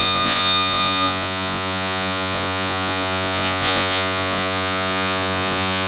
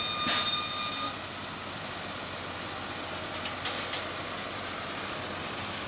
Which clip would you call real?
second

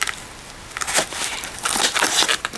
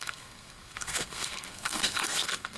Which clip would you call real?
first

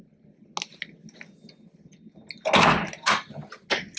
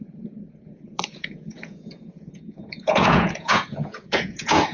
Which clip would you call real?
first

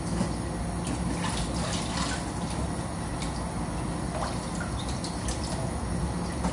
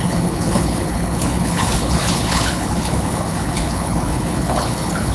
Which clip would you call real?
first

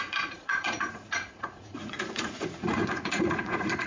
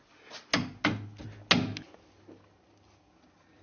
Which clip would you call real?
second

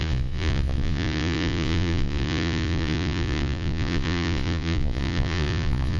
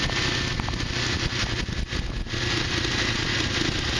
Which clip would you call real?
second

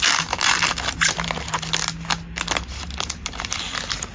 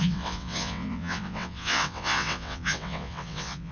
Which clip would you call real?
first